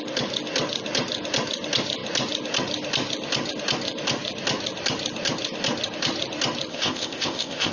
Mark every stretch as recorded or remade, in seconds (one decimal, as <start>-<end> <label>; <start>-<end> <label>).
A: 0.0-6.7 recorded; 6.7-7.7 remade